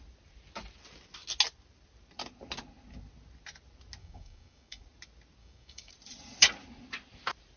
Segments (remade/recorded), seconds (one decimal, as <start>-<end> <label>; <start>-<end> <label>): 0.0-4.0 recorded; 4.0-4.8 remade; 4.8-5.4 recorded; 5.4-5.9 remade; 5.9-7.6 recorded